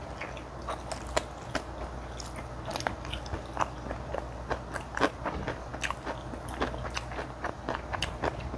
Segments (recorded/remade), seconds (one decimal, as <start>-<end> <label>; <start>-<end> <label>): 0.0-8.6 recorded

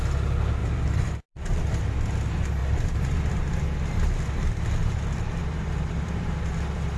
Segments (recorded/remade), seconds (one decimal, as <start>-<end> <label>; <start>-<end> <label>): 0.0-0.6 recorded; 0.6-1.6 remade; 1.6-5.4 recorded; 5.4-6.5 remade; 6.5-7.0 recorded

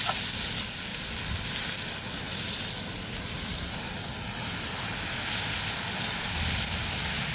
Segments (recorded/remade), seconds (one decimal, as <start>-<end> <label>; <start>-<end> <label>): 0.0-0.9 recorded; 0.9-1.6 remade; 1.6-7.3 recorded

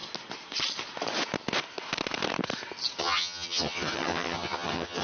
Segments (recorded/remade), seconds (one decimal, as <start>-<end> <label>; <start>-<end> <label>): 0.0-3.0 recorded; 3.0-5.0 remade

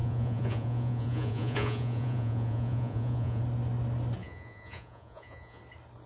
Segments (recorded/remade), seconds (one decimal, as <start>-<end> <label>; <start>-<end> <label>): 0.0-3.4 remade; 3.4-4.2 recorded; 4.2-5.6 remade; 5.6-6.1 recorded

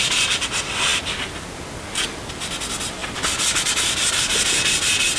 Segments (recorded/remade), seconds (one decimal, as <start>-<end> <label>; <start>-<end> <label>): 0.0-5.2 recorded

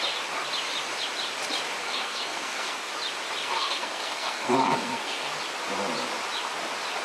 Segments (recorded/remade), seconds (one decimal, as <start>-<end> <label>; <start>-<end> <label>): 0.0-1.8 recorded; 1.8-2.9 remade; 2.9-3.4 recorded; 3.4-5.4 remade; 5.4-7.0 recorded

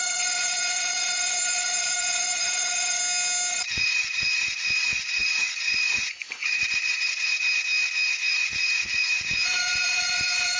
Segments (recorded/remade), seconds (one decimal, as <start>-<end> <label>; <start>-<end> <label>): 0.0-3.0 remade; 3.0-3.5 recorded; 3.5-7.3 remade; 7.3-8.1 recorded; 8.1-10.6 remade